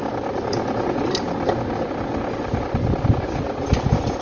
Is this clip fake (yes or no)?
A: no